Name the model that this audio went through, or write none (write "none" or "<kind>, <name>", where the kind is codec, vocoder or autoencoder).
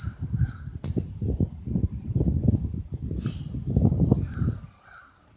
vocoder, BigVGAN v2